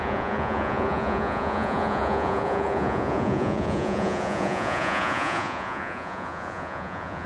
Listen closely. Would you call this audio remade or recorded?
remade